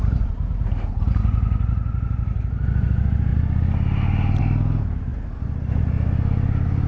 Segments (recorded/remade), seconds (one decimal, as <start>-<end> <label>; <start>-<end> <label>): 0.0-6.9 recorded